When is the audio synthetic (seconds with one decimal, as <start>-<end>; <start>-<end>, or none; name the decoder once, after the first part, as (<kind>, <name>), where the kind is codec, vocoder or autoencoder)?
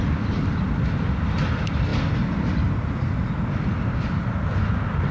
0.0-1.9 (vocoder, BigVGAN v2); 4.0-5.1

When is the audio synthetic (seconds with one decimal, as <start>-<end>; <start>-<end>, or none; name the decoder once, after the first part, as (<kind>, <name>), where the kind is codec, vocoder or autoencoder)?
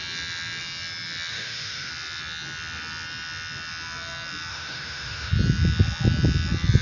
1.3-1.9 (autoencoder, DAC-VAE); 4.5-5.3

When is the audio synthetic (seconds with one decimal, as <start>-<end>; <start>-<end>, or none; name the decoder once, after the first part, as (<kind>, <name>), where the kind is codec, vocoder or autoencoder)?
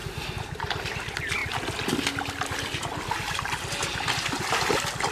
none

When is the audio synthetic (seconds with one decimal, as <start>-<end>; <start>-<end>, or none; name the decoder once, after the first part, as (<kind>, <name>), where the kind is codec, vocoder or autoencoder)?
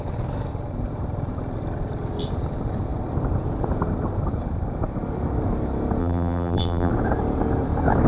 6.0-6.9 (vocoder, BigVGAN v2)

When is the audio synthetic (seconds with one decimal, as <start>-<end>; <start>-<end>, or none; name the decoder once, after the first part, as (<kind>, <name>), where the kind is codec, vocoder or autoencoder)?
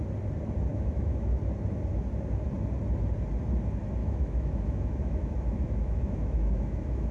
0.7-1.4 (autoencoder, DAC-VAE); 4.0-7.1